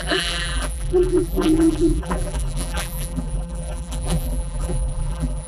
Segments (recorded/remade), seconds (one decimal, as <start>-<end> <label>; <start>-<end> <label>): 0.0-5.5 remade